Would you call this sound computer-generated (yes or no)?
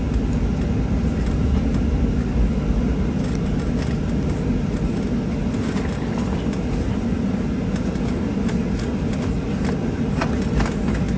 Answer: no